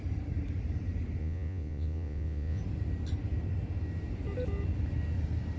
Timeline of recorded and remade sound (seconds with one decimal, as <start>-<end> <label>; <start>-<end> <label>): 0.0-1.2 recorded; 1.2-2.6 remade; 2.6-5.6 recorded